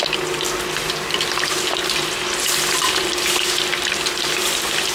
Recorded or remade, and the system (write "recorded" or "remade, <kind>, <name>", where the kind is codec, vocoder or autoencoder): recorded